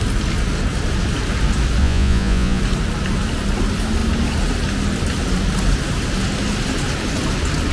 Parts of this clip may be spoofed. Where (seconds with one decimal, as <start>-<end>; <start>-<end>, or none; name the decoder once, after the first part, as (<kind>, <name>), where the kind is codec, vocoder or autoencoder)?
1.8-2.6 (vocoder, Vocos)